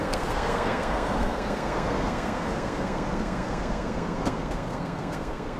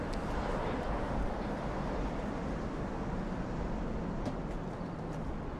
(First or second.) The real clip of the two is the second